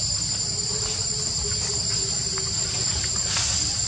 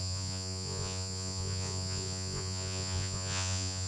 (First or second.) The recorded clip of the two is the first